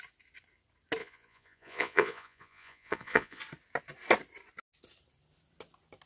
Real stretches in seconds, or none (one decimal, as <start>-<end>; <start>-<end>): 0.0-1.0; 3.4-6.1